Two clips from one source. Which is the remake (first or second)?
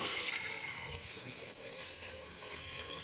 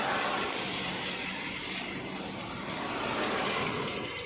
first